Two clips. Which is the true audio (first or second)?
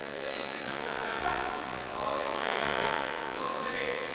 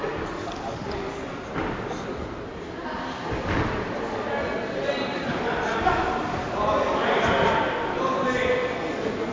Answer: second